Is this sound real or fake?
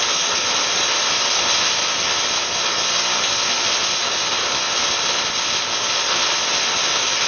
real